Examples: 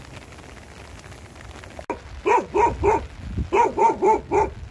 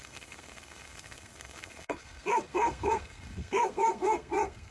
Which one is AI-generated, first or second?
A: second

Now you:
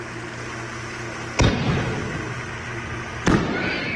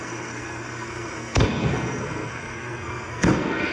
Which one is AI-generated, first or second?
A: second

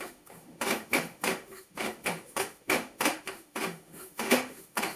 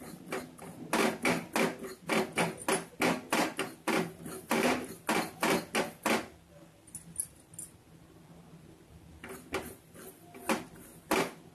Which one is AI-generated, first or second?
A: first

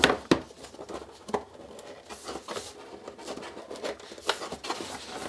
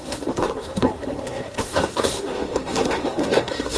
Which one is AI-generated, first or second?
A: second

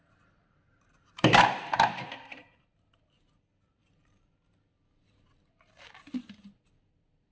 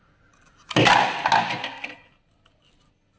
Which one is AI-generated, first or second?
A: first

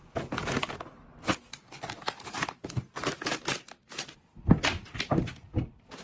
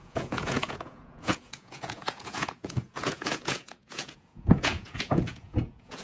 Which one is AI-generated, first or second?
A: second